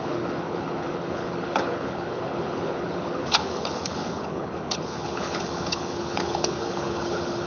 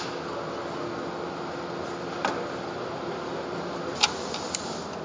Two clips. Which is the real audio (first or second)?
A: second